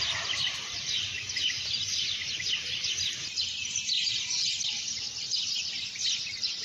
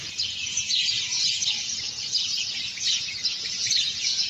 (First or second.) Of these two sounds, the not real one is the second